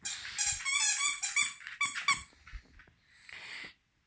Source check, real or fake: real